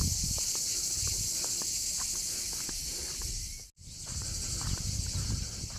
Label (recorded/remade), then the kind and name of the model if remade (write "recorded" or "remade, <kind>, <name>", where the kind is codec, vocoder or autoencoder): recorded